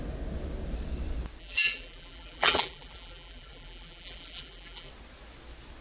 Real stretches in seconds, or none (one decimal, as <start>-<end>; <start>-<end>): 0.0-1.4; 4.9-5.8